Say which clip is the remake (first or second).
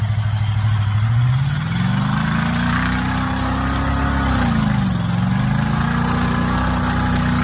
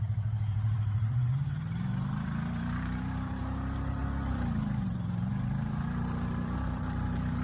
second